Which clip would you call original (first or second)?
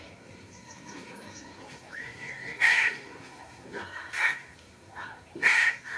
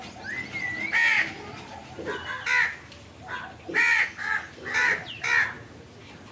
second